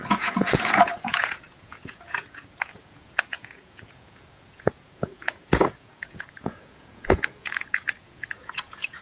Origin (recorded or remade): remade